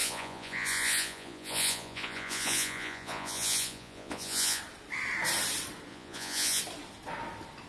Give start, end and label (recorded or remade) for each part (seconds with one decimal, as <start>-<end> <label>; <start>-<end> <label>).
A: 0.0-4.6 remade; 4.6-5.9 recorded; 5.9-6.6 remade; 6.6-7.7 recorded